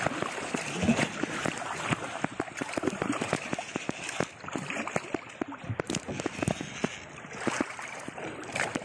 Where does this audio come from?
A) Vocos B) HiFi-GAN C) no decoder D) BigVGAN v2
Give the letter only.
D